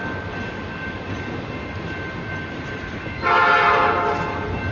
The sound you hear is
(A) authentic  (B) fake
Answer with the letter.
A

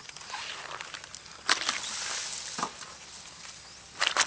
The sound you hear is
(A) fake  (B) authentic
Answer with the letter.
B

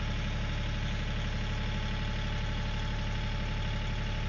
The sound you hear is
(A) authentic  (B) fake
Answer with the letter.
A